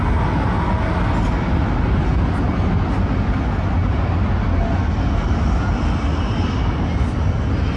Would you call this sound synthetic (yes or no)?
no